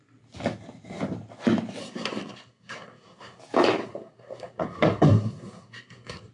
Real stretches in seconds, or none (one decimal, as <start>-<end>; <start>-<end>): 0.0-1.8; 3.4-3.8